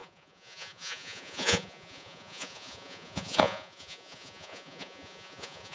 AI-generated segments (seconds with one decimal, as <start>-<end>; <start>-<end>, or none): 0.0-5.7